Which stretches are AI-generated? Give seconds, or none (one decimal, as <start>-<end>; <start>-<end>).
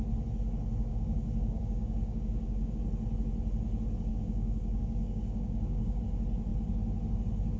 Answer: 0.9-2.7; 4.1-6.0